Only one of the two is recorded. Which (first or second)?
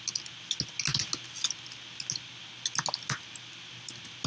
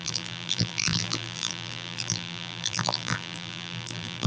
first